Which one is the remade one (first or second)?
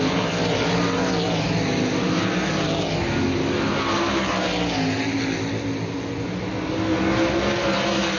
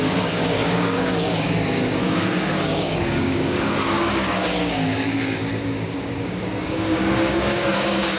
second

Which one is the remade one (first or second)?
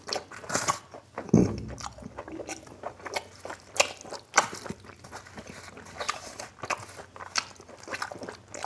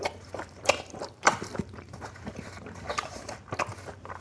second